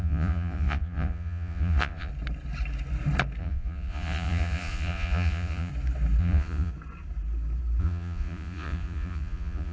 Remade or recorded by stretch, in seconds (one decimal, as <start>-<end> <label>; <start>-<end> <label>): 0.0-2.1 remade; 2.1-3.4 recorded; 3.4-5.7 remade; 5.7-6.2 recorded; 6.2-6.7 remade; 6.7-7.8 recorded; 7.8-9.7 remade